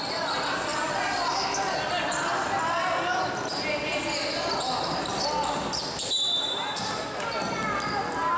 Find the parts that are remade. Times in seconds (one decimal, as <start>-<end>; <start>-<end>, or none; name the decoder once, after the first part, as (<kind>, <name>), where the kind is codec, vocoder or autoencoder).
none